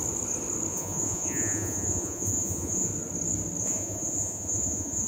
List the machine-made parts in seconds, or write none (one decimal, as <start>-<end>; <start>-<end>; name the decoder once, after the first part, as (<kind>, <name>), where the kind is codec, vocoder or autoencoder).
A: 0.7-2.9 (vocoder, Vocos); 3.6-5.1